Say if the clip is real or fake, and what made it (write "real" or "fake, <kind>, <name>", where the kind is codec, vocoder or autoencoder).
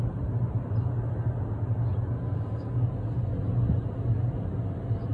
real